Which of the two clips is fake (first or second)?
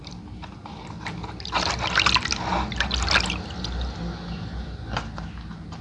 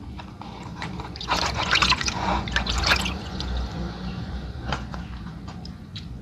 second